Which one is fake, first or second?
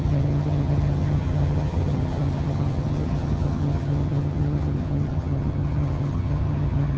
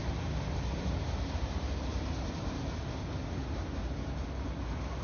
first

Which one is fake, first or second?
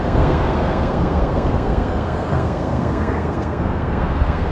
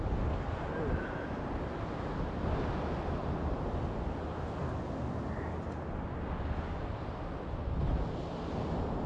first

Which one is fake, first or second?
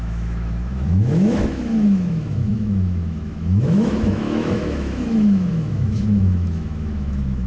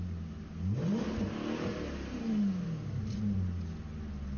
first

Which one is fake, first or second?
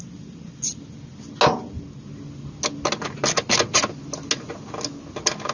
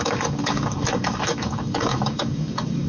second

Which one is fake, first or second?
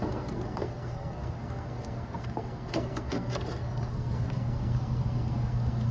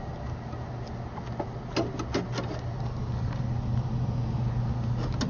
first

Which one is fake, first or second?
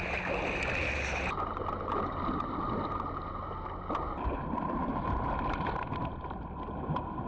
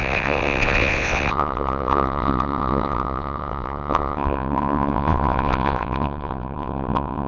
second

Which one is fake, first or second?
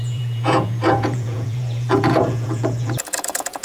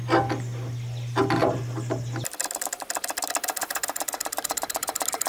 first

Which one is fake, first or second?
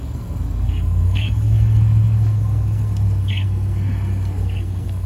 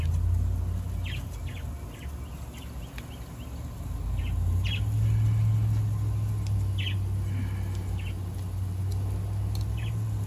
first